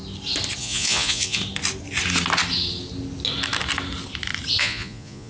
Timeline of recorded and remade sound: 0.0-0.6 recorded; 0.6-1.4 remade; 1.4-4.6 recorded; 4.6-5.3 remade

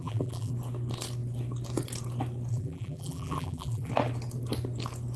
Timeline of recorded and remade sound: 0.0-0.5 remade; 0.5-2.5 recorded; 2.5-3.9 remade; 3.9-5.2 recorded

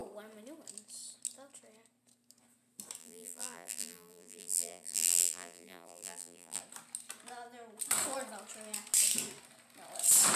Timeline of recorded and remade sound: 0.0-3.0 recorded; 3.0-6.6 remade; 6.6-10.4 recorded

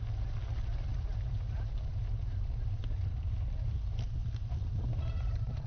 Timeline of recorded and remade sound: 0.0-0.9 recorded; 0.9-3.3 remade; 3.3-4.2 recorded; 4.2-5.7 remade

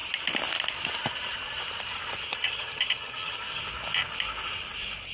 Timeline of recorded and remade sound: 0.0-2.3 recorded; 2.3-3.6 remade; 3.6-5.1 recorded

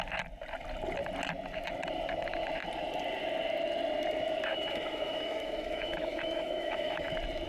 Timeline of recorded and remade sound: 0.0-4.5 recorded; 4.5-7.1 remade; 7.1-7.5 recorded